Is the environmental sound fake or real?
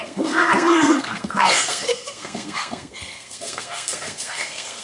fake